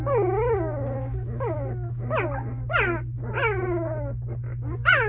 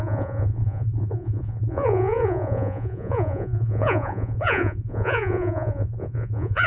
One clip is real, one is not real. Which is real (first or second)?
first